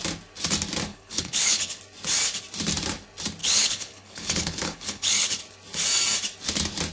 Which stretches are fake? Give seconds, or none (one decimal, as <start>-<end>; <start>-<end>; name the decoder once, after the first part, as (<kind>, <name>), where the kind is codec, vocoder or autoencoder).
0.9-1.8 (codec, HILCodec); 3.4-5.4